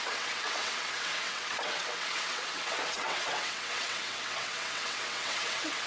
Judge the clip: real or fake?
fake